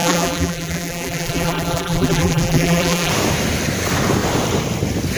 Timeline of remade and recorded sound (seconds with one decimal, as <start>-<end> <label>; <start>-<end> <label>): 0.0-3.1 remade; 3.1-5.2 recorded